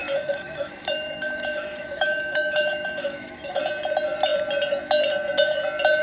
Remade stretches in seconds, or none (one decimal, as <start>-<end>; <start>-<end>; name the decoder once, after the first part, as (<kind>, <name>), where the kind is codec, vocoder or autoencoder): 0.0-3.6 (autoencoder, DAC-VAE)